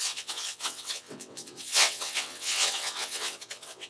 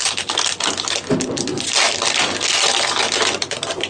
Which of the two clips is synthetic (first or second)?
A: first